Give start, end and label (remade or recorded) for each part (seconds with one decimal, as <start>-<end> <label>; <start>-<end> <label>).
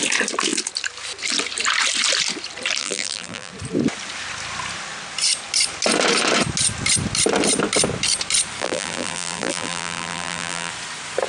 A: 0.0-2.8 recorded; 2.8-3.5 remade; 3.5-8.6 recorded; 8.6-10.7 remade; 10.7-11.3 recorded